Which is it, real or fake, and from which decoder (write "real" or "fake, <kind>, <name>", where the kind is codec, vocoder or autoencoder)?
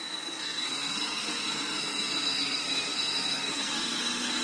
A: fake, codec, SNAC